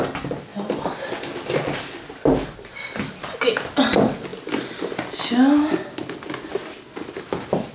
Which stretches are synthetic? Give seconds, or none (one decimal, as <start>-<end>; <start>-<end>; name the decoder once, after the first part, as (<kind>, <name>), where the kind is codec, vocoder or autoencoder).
none